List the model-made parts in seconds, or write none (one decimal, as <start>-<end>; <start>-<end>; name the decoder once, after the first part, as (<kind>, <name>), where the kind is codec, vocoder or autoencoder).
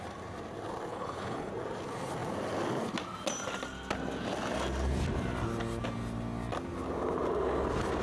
0.9-1.5 (codec, HILCodec)